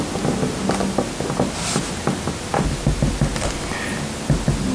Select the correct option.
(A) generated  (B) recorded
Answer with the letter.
B